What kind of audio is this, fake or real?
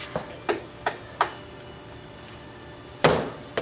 real